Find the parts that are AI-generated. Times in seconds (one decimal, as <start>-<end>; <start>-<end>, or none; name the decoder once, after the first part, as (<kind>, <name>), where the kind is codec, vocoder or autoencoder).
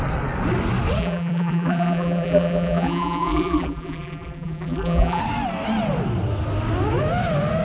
1.0-5.2 (vocoder, BigVGAN v2)